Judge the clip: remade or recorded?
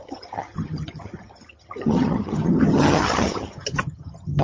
remade